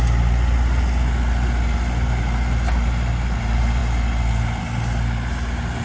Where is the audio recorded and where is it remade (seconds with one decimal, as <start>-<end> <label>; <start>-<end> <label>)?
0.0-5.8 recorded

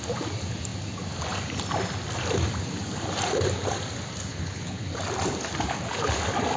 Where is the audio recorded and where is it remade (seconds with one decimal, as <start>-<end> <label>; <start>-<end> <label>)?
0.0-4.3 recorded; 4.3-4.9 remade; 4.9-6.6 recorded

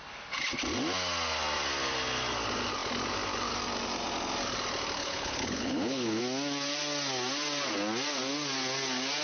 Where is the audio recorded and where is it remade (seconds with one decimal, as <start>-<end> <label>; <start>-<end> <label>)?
0.0-5.0 recorded; 5.0-6.2 remade; 6.2-9.2 recorded

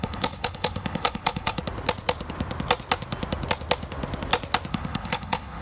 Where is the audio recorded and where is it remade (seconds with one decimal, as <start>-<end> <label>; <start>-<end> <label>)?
0.0-1.6 remade; 1.6-4.7 recorded; 4.7-5.6 remade